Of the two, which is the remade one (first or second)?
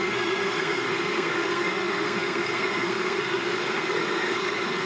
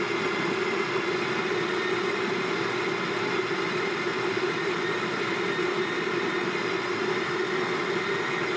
first